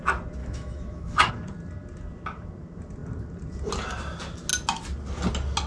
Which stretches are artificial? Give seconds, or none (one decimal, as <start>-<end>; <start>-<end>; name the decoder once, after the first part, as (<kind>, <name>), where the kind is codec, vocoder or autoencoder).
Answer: 0.4-1.3 (autoencoder, DAC-VAE)